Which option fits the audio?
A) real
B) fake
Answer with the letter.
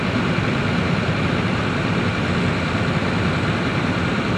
A